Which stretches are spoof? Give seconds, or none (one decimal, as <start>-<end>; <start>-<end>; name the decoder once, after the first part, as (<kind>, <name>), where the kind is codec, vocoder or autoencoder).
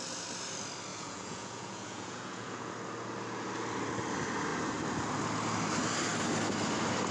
0.9-2.7 (vocoder, Vocos)